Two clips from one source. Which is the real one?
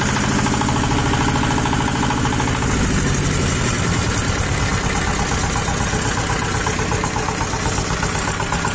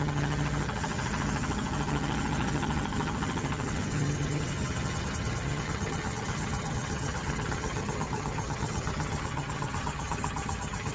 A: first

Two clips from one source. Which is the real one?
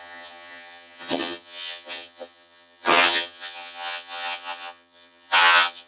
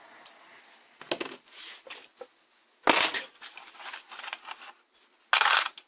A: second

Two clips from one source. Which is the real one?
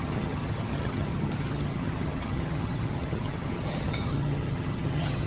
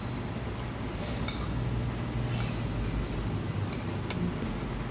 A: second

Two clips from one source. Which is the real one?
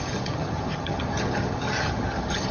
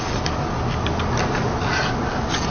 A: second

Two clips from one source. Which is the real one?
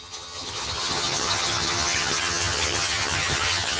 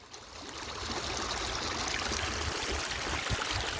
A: second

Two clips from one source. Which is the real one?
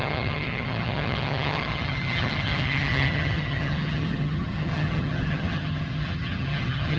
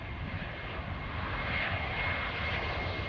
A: second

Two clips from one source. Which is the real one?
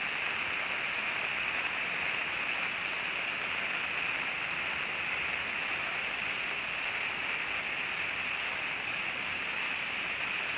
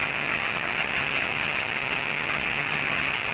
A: first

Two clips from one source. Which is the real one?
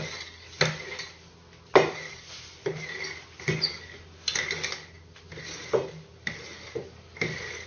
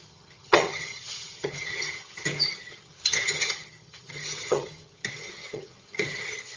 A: first